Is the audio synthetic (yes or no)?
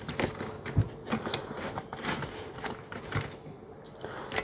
no